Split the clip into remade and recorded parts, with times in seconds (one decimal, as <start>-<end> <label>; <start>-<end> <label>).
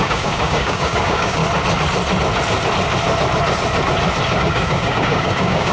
0.0-1.4 remade; 1.4-4.4 recorded; 4.4-5.7 remade